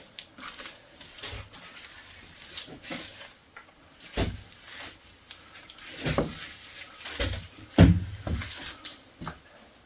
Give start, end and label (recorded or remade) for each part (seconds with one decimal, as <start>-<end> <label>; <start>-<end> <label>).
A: 0.0-9.9 recorded